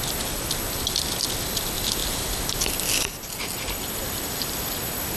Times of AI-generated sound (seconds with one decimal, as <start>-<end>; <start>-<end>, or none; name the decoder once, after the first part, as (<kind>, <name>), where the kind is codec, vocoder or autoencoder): none